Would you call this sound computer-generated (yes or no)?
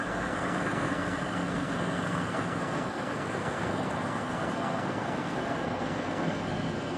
yes